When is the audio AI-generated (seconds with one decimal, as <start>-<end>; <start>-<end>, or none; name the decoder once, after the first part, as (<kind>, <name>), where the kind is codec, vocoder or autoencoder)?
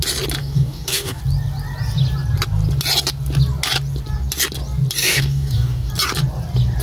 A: 0.4-1.2 (codec, DAC); 5.0-5.9